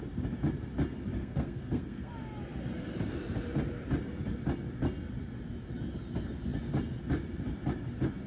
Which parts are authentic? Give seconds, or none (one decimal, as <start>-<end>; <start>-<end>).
0.0-1.2; 2.1-8.3